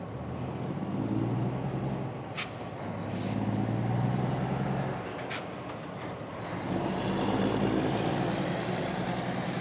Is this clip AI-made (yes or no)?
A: no